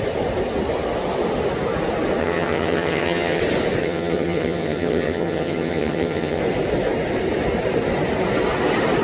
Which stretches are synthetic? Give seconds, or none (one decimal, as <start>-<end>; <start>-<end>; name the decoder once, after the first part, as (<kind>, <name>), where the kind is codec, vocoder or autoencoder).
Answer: 2.2-3.4 (vocoder, HiFi-GAN); 3.8-6.4